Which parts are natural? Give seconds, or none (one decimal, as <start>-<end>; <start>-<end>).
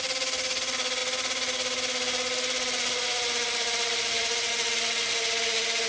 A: 0.0-5.9